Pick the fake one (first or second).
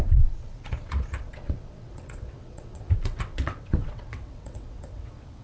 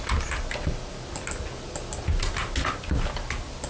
first